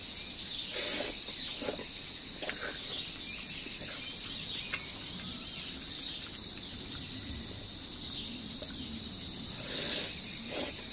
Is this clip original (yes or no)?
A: yes